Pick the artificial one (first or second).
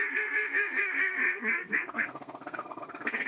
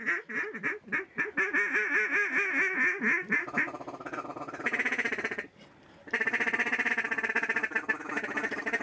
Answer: first